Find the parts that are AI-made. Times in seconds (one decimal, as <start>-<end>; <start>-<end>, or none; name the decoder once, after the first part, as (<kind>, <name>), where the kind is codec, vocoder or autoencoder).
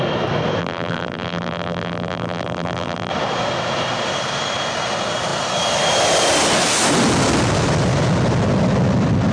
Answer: 0.6-3.1 (vocoder, BigVGAN v2)